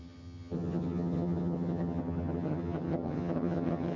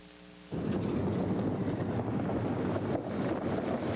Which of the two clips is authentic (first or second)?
second